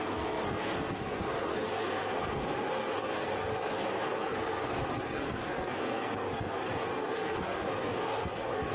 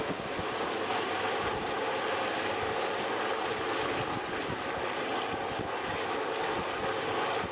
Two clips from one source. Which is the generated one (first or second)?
first